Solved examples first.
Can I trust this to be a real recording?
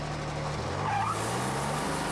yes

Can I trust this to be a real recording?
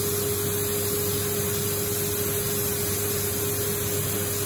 yes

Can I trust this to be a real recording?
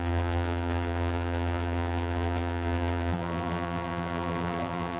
no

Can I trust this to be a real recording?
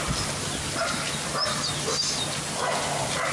yes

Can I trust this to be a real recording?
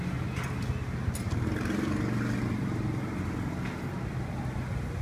yes